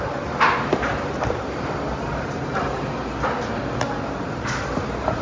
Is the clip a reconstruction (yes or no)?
yes